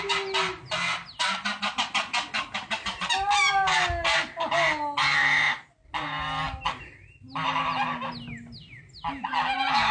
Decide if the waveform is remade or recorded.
recorded